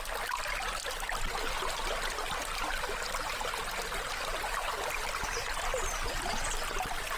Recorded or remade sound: recorded